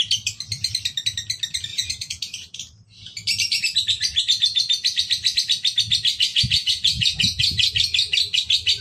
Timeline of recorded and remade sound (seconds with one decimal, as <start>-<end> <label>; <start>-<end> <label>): 0.0-1.7 recorded; 1.7-2.6 remade; 2.6-6.3 recorded; 6.3-7.7 remade; 7.7-8.8 recorded